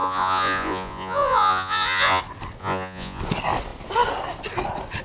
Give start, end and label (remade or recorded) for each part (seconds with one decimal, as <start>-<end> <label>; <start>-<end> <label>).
0.0-2.2 remade; 2.2-2.6 recorded; 2.6-3.2 remade; 3.2-5.0 recorded